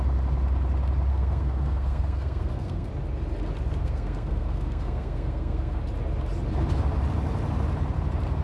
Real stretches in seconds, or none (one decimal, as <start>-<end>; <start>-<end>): 0.0-1.1; 2.9-3.8; 5.8-8.4